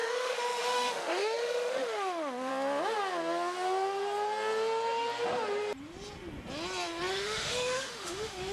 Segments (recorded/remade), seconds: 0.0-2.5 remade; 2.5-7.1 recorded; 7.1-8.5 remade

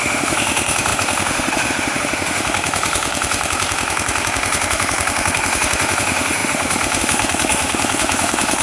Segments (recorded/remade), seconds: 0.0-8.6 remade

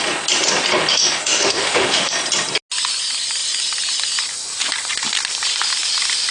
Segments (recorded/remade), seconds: 0.0-0.9 recorded; 0.9-2.1 remade; 2.1-6.3 recorded